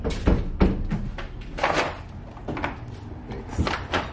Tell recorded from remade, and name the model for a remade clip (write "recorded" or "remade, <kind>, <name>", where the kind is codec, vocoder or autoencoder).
recorded